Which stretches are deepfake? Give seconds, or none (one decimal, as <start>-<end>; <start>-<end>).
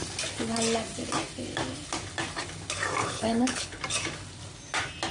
3.0-3.8